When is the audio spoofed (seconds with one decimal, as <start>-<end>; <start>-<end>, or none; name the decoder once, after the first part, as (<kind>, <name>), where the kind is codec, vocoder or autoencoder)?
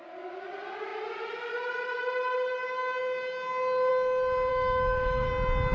4.5-5.3 (autoencoder, DAC-VAE)